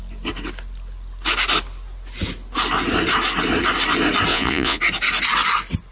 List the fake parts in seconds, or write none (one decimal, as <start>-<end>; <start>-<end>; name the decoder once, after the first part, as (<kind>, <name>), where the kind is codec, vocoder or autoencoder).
4.3-4.8 (vocoder, Vocos)